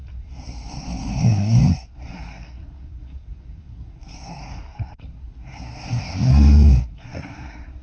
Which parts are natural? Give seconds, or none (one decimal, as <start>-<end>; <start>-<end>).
none